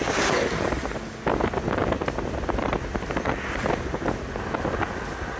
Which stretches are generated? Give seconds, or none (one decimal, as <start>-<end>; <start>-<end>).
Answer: none